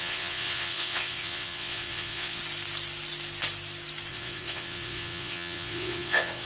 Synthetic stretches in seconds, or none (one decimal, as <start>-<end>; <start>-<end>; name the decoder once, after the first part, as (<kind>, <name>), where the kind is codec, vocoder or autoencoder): 0.0-2.4 (vocoder, WaveNeXt); 4.1-6.5